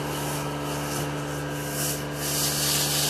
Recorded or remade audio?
recorded